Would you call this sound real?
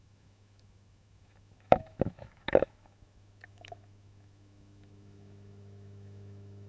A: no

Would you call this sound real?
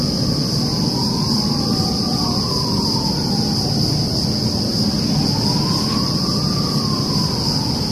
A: yes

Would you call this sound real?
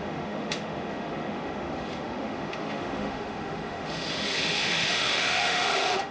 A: no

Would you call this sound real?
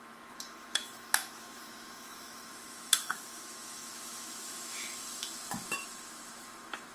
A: no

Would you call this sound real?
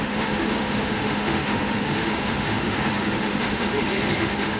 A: no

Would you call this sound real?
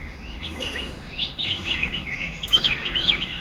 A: no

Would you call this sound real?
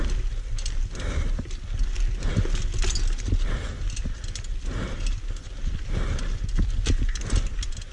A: yes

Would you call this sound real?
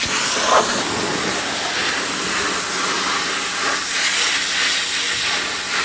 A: yes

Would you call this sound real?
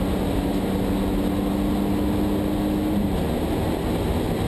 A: yes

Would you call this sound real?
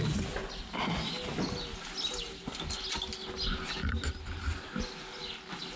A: yes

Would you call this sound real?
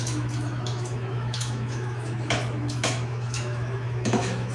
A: no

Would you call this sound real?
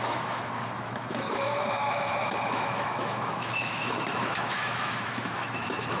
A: no